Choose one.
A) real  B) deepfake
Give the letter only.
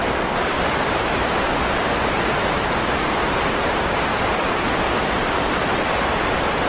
B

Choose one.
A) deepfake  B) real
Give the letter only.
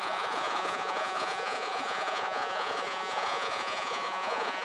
A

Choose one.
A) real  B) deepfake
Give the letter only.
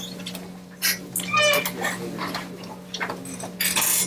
A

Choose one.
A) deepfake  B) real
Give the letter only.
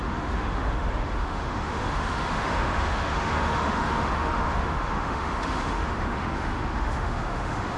A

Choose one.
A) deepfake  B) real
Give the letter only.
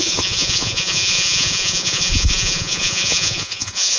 A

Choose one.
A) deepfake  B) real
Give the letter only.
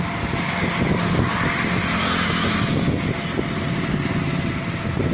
B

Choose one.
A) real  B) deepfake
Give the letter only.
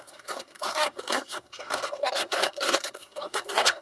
B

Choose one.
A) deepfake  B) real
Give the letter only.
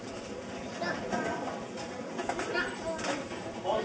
B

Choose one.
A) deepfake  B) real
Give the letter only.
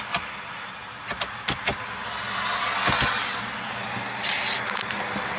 B